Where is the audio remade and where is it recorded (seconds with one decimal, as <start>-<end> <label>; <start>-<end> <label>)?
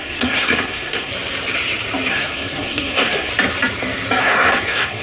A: 0.0-1.1 remade; 1.1-2.1 recorded; 2.1-3.3 remade; 3.3-4.2 recorded; 4.2-5.0 remade